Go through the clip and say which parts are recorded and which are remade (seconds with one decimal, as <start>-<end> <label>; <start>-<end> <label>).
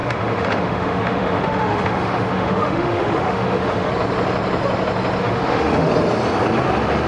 0.0-3.9 remade; 3.9-5.2 recorded; 5.2-5.9 remade; 5.9-7.1 recorded